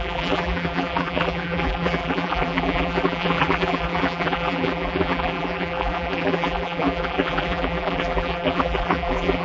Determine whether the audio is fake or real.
fake